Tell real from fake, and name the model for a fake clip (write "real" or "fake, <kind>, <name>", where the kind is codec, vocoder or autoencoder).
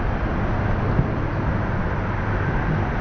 real